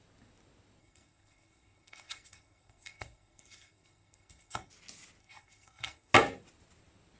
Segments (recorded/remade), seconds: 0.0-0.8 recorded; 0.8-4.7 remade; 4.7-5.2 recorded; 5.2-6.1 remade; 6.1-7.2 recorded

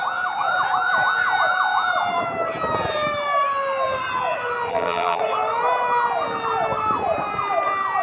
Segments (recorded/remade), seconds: 0.0-4.7 recorded; 4.7-5.2 remade; 5.2-8.0 recorded

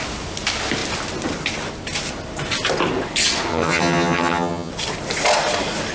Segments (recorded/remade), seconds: 0.0-3.5 recorded; 3.5-4.7 remade; 4.7-5.9 recorded

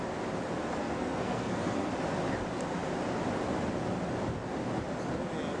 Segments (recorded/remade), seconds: 0.0-0.8 recorded; 0.8-1.9 remade; 1.9-5.6 recorded

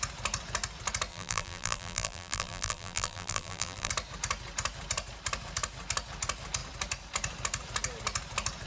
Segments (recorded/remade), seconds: 0.0-1.1 recorded; 1.1-3.9 remade; 3.9-8.7 recorded

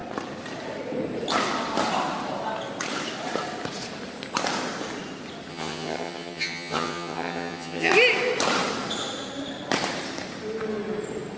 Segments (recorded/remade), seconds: 0.0-5.5 recorded; 5.5-7.9 remade; 7.9-11.4 recorded